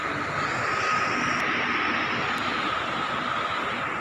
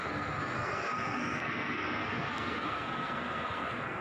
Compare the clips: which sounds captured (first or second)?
first